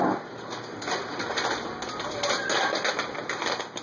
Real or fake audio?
real